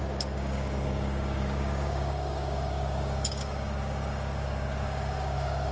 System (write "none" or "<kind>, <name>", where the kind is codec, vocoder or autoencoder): codec, DAC